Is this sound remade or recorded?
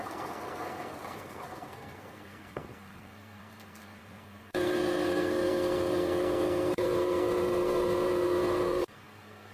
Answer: remade